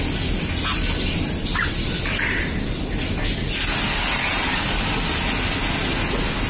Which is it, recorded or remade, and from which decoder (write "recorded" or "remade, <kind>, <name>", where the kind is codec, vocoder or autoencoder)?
recorded